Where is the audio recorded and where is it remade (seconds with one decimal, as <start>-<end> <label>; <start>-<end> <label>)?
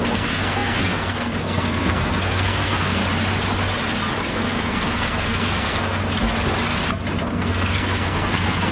0.0-3.0 remade; 3.0-4.3 recorded; 4.3-6.0 remade; 6.0-7.3 recorded; 7.3-8.7 remade